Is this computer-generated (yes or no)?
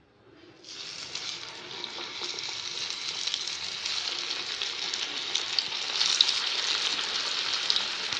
no